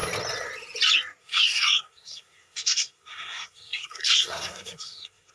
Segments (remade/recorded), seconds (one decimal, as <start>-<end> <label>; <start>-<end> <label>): 0.0-1.2 recorded; 1.2-5.3 remade